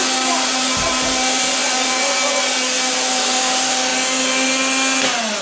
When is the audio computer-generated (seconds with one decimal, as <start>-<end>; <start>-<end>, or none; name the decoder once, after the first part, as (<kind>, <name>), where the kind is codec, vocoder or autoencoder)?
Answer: 0.0-3.9 (vocoder, BigVGAN v2)